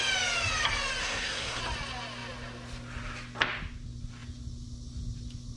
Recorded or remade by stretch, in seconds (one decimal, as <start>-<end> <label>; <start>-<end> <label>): 0.0-1.0 recorded; 1.0-1.6 remade; 1.6-5.6 recorded